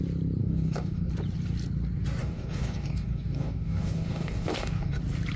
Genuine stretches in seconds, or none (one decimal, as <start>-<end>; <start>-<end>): 0.0-0.4; 1.1-2.2; 5.0-5.4